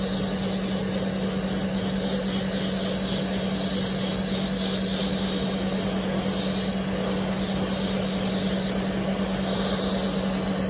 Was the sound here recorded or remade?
recorded